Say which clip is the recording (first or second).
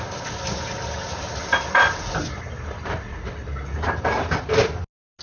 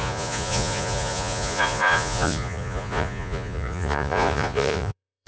first